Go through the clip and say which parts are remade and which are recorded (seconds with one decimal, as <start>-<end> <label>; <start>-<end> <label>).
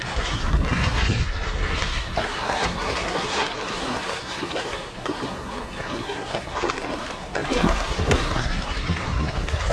0.0-9.7 remade